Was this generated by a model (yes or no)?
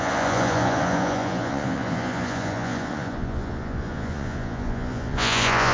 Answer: yes